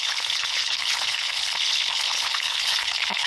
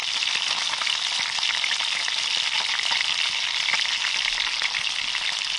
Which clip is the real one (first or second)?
second